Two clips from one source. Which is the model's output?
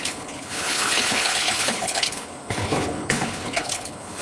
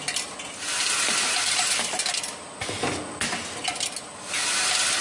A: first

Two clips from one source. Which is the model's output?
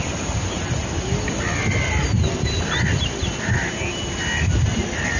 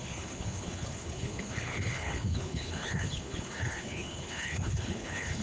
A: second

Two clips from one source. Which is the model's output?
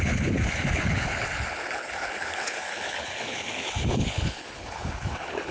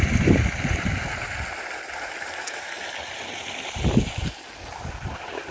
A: first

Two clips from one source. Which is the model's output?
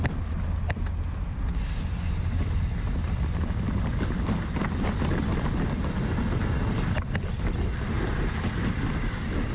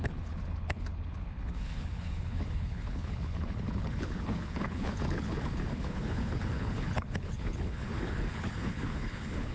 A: second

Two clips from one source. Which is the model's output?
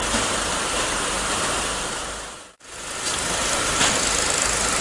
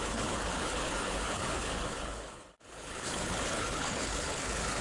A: second